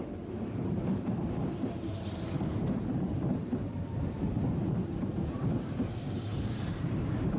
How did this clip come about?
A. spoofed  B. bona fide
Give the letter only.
A